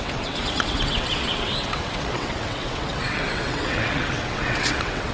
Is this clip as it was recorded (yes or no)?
no